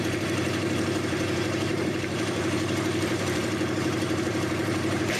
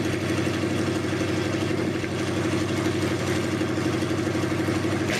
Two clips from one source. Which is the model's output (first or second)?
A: first